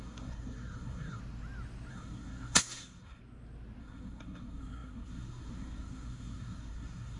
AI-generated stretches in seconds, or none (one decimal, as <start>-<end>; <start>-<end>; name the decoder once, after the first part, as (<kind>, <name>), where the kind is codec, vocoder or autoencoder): 0.0-1.2 (codec, SNAC); 1.9-3.2; 3.8-7.2